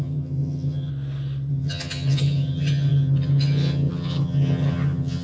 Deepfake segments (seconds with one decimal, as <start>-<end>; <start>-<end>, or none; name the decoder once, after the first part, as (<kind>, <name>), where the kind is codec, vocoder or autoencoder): 0.0-0.9 (vocoder, HiFi-GAN); 1.5-5.2